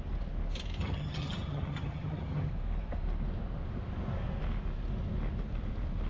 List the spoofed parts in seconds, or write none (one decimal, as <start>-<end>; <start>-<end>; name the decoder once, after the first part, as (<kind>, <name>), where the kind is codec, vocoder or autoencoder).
0.8-2.5 (vocoder, HiFi-GAN)